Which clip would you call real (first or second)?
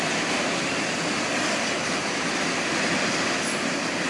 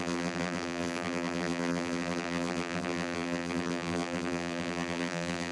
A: first